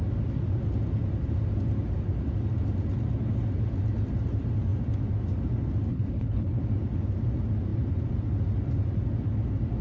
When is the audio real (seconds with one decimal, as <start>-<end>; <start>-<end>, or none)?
0.0-5.9; 6.6-9.8